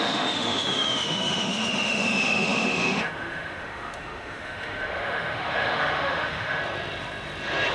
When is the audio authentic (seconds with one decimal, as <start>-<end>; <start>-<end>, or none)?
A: 6.6-7.7